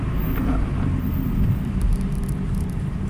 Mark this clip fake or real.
real